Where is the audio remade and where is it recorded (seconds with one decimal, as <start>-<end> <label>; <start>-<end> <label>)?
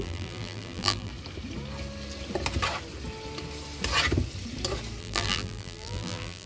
0.0-1.1 remade; 1.1-5.0 recorded; 5.0-6.5 remade